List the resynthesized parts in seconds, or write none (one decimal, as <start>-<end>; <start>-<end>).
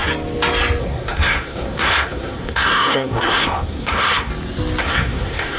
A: 0.8-4.3; 4.8-5.6